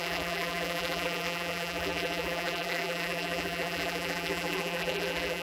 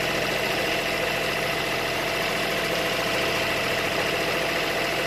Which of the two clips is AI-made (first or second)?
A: first